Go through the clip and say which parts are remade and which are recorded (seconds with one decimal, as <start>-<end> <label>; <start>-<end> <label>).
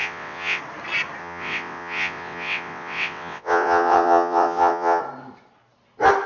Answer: 0.0-0.6 remade; 0.6-1.2 recorded; 1.2-5.0 remade; 5.0-6.3 recorded